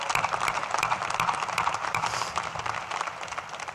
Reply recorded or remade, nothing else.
remade